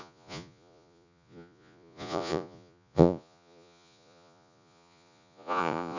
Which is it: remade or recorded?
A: remade